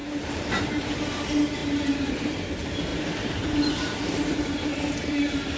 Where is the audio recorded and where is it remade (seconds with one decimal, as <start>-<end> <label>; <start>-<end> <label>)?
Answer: 0.0-5.6 remade